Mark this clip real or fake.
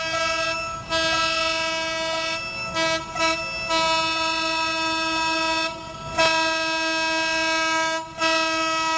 real